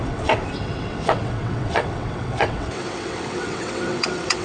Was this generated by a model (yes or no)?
yes